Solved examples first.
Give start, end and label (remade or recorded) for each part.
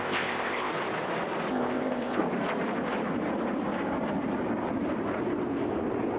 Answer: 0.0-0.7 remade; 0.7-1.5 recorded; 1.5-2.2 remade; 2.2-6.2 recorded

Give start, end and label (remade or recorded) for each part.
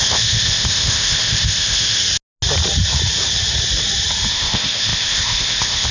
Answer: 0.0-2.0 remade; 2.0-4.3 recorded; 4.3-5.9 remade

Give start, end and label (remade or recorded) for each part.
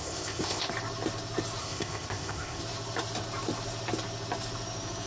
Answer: 0.0-0.7 remade; 0.7-1.6 recorded; 1.6-2.6 remade; 2.6-5.1 recorded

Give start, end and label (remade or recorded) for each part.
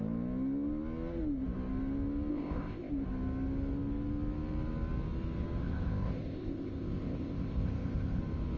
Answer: 0.0-2.3 recorded; 2.3-2.9 remade; 2.9-5.6 recorded; 5.6-8.2 remade; 8.2-8.6 recorded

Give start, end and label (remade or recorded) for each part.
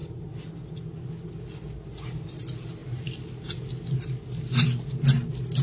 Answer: 0.0-5.6 recorded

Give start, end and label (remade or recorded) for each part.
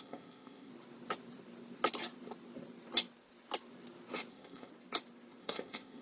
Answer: 0.0-0.7 remade; 0.7-4.3 recorded; 4.3-4.7 remade; 4.7-5.4 recorded; 5.4-6.0 remade